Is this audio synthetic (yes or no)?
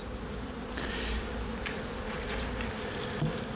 no